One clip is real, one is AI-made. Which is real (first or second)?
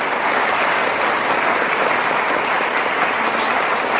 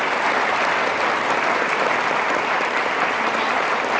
first